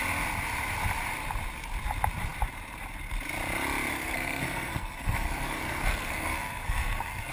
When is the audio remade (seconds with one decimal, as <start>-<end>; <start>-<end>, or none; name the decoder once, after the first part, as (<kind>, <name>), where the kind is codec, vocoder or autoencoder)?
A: 3.9-7.3 (codec, SNAC)